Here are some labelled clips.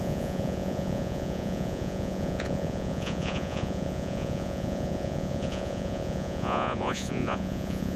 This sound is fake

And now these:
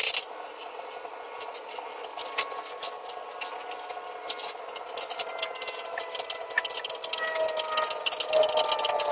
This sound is real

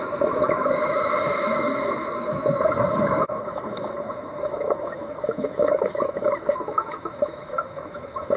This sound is fake